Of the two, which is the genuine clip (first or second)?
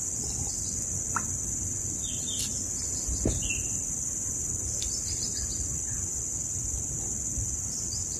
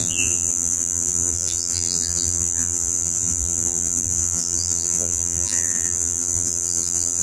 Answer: first